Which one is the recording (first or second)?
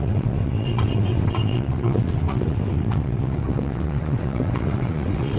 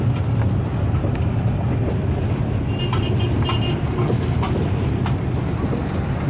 second